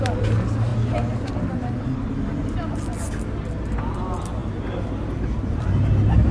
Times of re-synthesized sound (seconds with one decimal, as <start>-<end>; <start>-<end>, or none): none